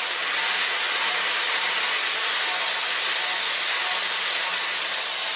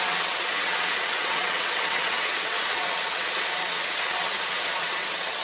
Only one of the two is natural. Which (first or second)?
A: first